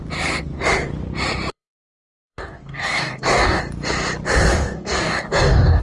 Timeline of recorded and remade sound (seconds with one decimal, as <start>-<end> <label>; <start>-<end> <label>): 0.0-1.5 recorded; 1.5-3.6 remade; 3.6-4.5 recorded; 4.5-5.8 remade